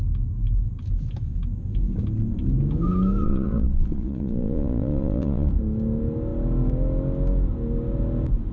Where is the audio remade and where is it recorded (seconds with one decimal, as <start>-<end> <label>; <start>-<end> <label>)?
0.0-3.2 recorded; 3.2-5.5 remade; 5.5-8.5 recorded